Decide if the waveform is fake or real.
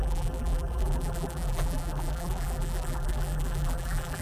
fake